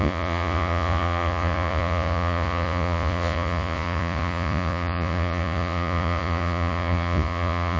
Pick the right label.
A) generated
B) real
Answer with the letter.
A